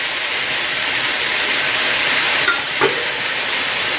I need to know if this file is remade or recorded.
recorded